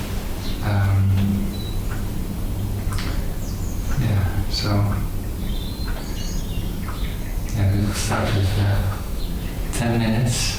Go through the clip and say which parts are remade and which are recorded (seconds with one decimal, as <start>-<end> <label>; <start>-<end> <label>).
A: 0.0-7.8 recorded; 7.8-9.2 remade; 9.2-10.6 recorded